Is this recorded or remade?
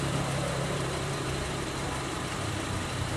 remade